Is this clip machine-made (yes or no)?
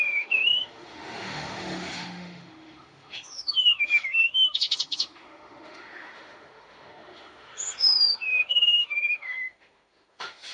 yes